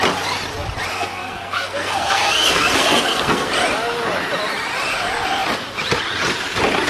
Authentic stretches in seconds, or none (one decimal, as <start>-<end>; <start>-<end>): 0.0-0.9; 3.5-6.9